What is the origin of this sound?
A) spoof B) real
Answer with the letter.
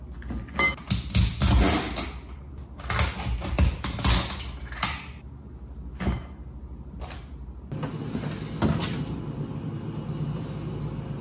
B